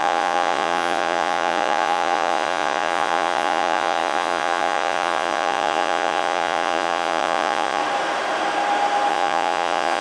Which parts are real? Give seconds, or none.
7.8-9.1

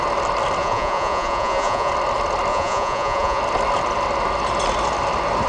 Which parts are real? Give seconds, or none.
0.0-0.6; 1.9-2.5; 3.4-5.5

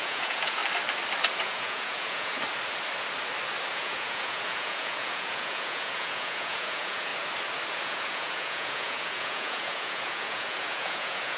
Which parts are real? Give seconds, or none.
0.6-1.4; 2.4-3.7; 7.1-7.7

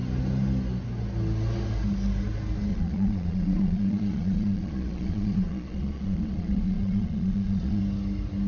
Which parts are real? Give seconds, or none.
0.0-2.7; 7.8-8.5

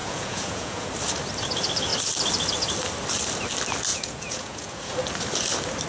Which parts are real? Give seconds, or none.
0.9-3.9; 4.9-5.9

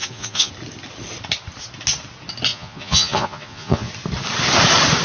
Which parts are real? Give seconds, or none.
0.5-2.5; 3.9-5.0

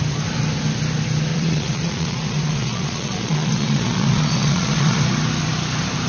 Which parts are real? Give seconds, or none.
0.0-1.3; 5.0-6.1

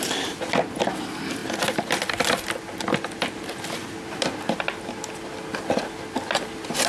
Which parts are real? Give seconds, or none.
0.0-6.9